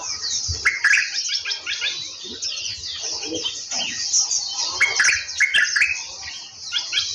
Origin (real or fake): real